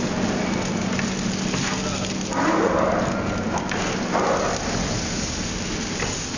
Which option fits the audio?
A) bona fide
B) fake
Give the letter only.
A